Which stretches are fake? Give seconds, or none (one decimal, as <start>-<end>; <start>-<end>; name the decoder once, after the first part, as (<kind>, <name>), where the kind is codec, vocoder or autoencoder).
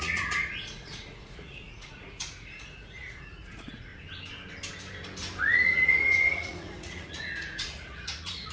0.0-3.9 (vocoder, Vocos); 5.4-8.5